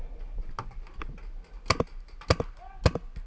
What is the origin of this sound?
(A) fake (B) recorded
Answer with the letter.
B